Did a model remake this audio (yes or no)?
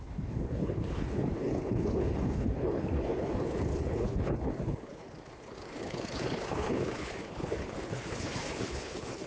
yes